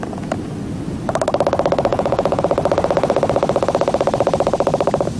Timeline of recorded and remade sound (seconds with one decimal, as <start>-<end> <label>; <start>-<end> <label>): 0.0-1.9 recorded; 1.9-2.4 remade; 2.4-5.2 recorded